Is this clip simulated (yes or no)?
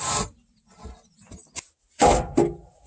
no